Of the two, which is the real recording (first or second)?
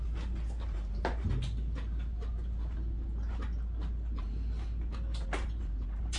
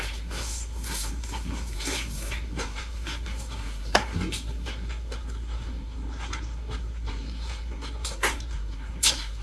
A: first